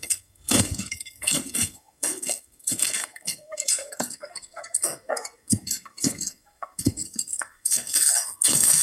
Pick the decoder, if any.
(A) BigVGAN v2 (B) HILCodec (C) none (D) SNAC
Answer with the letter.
D